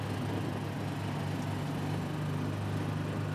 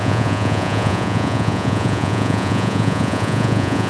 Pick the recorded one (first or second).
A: first